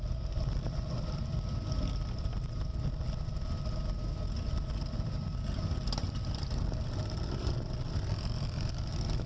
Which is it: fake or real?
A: real